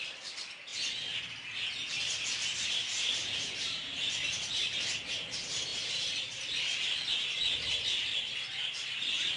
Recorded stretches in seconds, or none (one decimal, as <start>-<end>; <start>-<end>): 0.0-3.2; 4.1-9.4